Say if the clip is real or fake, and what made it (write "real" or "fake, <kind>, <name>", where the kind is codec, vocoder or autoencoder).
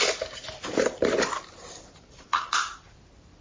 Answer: real